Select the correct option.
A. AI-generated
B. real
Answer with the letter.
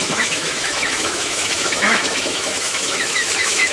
A